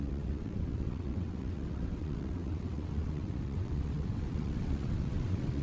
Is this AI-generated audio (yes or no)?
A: yes